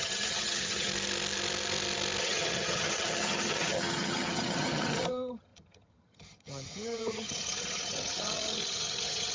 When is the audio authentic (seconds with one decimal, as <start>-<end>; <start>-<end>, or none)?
0.9-2.2